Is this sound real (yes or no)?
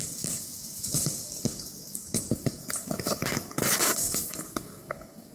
no